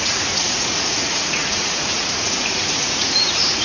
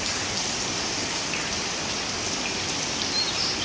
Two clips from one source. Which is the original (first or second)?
second